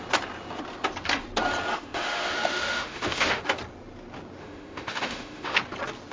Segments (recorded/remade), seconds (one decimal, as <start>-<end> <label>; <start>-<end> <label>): 0.0-1.7 recorded; 1.7-3.4 remade; 3.4-4.4 recorded; 4.4-5.6 remade; 5.6-6.1 recorded

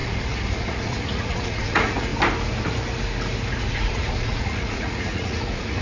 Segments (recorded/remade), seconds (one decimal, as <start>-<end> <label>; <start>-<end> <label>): 0.0-2.1 remade; 2.1-3.6 recorded; 3.6-5.8 remade